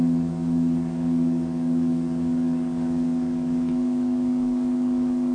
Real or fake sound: fake